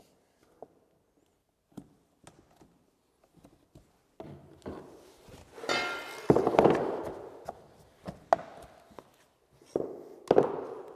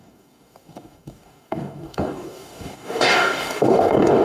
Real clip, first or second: first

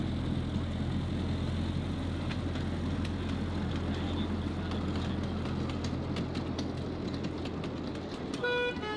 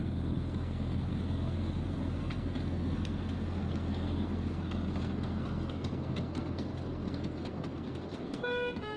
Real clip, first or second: first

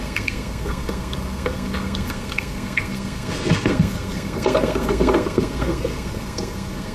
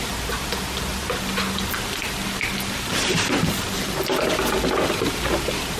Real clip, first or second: second